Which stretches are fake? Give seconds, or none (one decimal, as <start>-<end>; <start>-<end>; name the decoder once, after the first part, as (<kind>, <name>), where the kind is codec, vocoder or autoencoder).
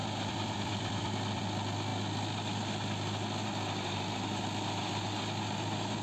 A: 0.0-1.4 (vocoder, BigVGAN v2)